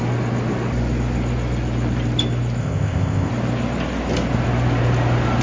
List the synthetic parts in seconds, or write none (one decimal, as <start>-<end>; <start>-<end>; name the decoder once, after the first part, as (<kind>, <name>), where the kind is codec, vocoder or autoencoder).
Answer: 2.6-3.3 (codec, ZipCodec)